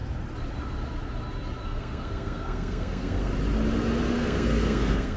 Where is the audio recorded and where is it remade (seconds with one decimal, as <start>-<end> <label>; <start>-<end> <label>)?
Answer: 0.0-1.6 recorded; 1.6-3.3 remade; 3.3-4.1 recorded; 4.1-5.2 remade